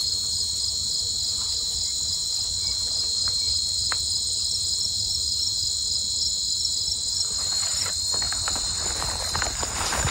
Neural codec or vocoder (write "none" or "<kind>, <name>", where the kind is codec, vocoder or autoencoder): vocoder, BigVGAN v2